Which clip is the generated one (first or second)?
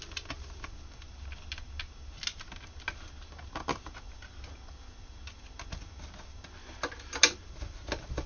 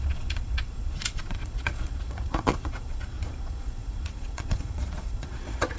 second